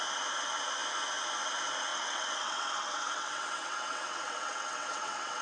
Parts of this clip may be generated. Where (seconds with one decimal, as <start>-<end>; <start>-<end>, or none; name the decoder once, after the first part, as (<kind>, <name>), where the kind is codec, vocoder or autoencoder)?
1.9-5.4 (vocoder, WaveNeXt)